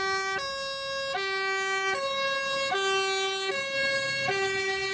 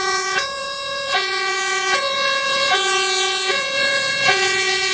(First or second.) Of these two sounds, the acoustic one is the first